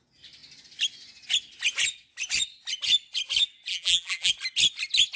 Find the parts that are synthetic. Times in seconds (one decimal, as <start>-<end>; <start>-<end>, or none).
3.7-4.3